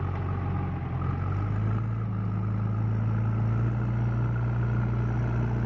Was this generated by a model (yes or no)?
no